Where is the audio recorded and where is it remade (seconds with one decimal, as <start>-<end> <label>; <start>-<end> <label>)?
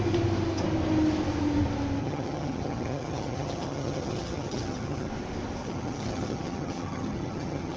0.0-2.0 recorded; 2.0-5.1 remade; 5.1-5.6 recorded; 5.6-7.8 remade